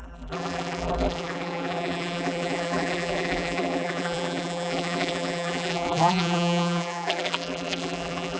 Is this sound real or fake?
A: fake